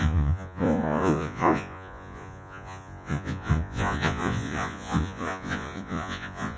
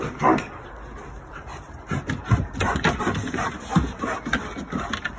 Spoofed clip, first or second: first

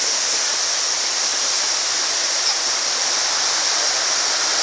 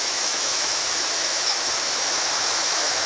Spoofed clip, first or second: second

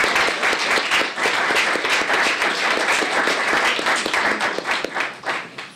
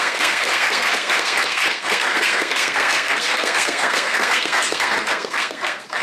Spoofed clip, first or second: second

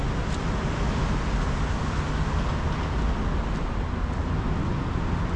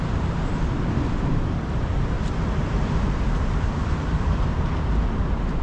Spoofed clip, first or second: second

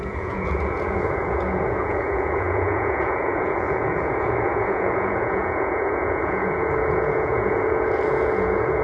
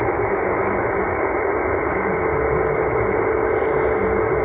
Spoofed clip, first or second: first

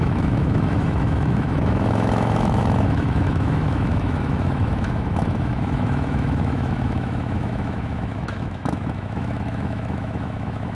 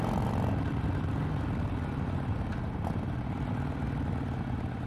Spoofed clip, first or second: first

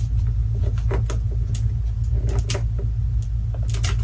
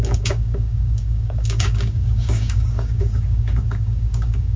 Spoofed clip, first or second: second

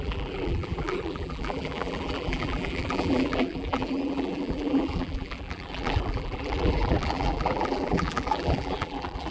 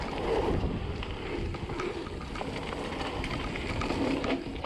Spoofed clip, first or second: first